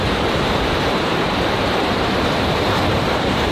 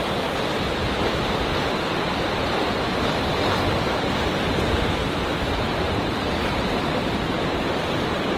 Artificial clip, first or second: first